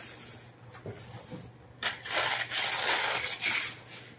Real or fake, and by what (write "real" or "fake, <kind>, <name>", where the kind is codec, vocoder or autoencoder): real